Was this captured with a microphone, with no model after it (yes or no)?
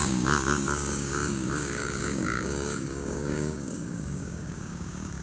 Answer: no